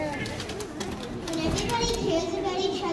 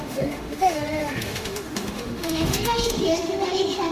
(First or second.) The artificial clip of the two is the second